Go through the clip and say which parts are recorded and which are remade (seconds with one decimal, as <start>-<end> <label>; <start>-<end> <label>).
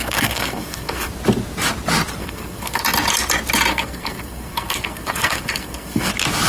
0.0-1.1 remade; 1.1-2.2 recorded; 2.2-2.8 remade; 2.8-3.7 recorded; 3.7-6.1 remade; 6.1-6.5 recorded